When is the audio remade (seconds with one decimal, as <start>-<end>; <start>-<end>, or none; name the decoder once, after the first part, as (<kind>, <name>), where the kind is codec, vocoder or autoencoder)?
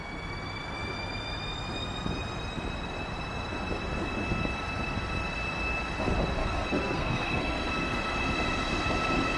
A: 6.4-7.7 (codec, SNAC)